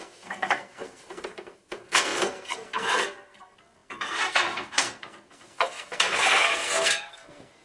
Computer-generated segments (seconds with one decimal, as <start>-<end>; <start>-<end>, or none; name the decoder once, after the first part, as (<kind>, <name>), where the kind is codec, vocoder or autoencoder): 0.0-7.6 (codec, SNAC)